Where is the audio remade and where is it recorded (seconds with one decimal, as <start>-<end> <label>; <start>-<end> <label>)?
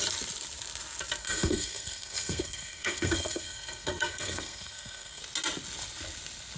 0.0-1.2 recorded; 1.2-5.2 remade; 5.2-6.6 recorded